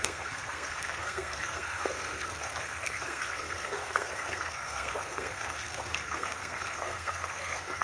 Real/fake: fake